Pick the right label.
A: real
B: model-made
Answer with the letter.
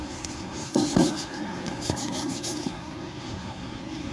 B